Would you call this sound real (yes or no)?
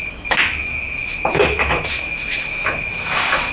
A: no